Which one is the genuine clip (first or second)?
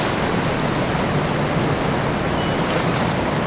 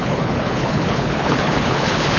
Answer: first